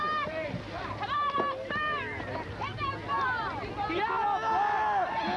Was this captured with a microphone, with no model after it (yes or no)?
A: yes